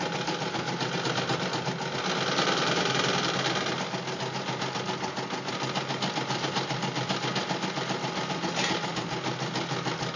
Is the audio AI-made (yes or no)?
no